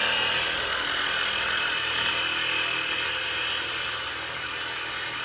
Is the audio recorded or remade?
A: recorded